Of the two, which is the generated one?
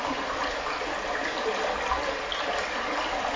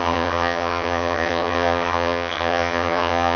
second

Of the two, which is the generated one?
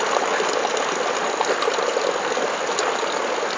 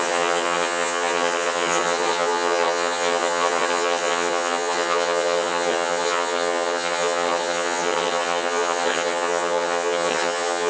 second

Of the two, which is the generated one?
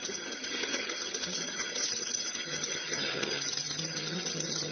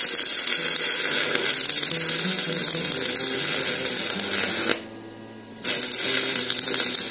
first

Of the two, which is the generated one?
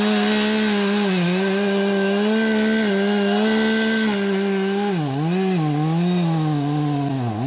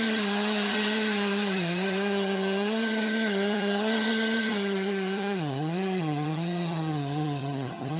second